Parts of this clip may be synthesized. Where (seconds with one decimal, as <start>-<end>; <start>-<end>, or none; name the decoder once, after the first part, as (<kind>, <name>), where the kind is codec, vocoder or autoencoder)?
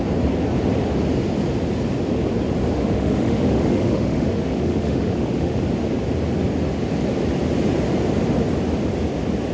2.7-5.6 (autoencoder, DAC-VAE)